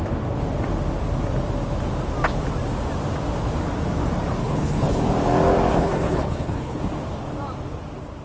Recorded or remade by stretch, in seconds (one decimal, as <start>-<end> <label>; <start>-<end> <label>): 0.0-4.4 recorded; 4.4-5.0 remade; 5.0-5.7 recorded; 5.7-6.8 remade; 6.8-8.2 recorded

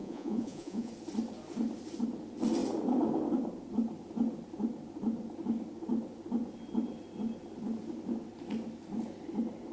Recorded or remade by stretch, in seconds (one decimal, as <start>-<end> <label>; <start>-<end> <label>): 0.0-0.9 remade; 0.9-9.7 recorded

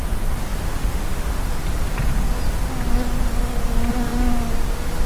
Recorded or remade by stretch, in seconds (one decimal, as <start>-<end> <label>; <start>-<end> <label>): 0.0-5.1 recorded

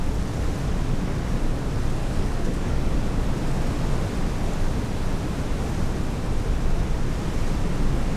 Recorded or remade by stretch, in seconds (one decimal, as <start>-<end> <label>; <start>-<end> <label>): 0.0-2.0 recorded; 2.0-2.9 remade; 2.9-8.2 recorded